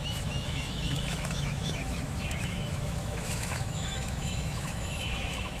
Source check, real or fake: fake